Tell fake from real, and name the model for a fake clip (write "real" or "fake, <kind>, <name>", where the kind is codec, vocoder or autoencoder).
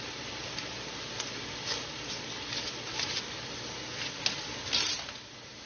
real